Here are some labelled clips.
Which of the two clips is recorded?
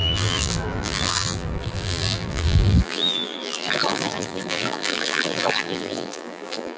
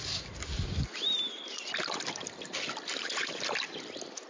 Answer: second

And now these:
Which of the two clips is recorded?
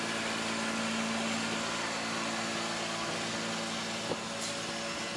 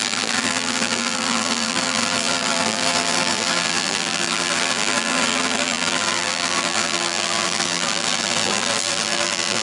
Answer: first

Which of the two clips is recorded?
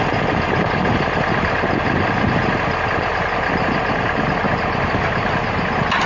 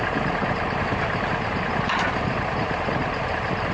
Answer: first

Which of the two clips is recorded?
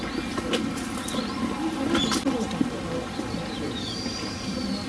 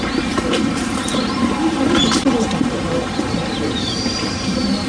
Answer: first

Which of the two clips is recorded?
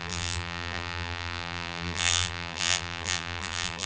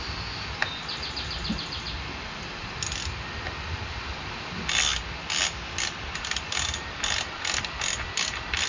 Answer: second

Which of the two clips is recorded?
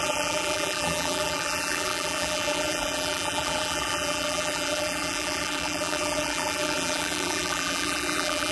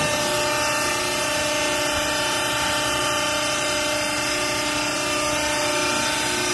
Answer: second